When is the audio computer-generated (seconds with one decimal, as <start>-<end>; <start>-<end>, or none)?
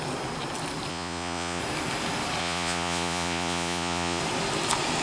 0.9-1.6; 2.4-4.2